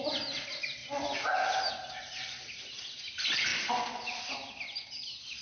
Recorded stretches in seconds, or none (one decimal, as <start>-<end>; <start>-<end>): 0.0-5.4